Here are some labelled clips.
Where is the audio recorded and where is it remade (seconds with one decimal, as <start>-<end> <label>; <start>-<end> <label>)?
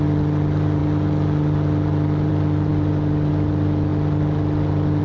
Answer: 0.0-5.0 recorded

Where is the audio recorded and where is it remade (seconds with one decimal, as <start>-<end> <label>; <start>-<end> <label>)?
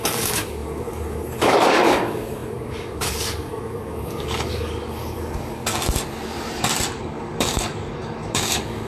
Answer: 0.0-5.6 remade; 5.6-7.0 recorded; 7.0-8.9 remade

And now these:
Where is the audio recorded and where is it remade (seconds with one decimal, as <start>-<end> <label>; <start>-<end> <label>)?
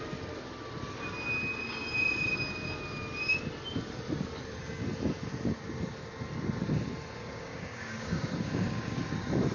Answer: 0.0-7.2 recorded; 7.2-9.0 remade; 9.0-9.5 recorded